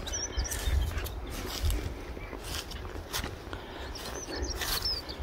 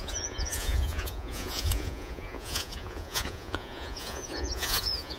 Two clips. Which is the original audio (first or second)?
first